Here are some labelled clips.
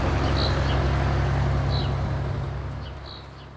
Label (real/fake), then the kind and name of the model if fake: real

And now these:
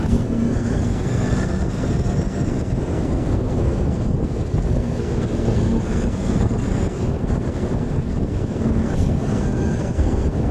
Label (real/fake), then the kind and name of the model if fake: fake, codec, SNAC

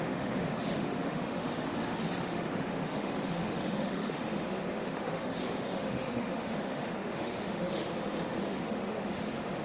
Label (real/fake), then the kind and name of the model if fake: fake, autoencoder, DAC-VAE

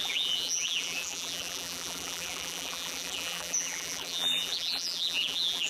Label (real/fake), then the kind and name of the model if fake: fake, vocoder, BigVGAN v2